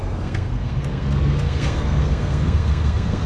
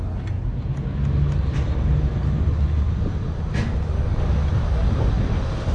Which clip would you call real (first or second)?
second